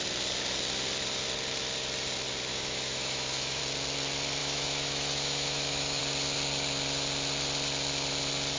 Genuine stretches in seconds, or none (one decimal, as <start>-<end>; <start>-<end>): 0.0-2.5; 3.6-4.4; 6.0-8.6